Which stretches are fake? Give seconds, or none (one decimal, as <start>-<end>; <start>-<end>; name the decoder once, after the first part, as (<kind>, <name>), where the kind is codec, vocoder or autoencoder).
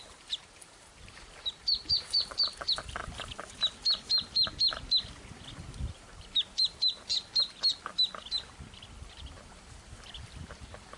0.0-3.0 (vocoder, BigVGAN v2); 5.9-7.1; 9.0-11.0